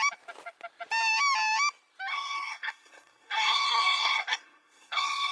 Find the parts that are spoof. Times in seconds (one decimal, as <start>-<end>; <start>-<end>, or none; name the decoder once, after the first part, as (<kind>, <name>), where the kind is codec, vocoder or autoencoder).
2.1-5.3 (codec, SNAC)